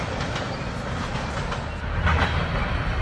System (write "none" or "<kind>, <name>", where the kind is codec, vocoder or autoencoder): none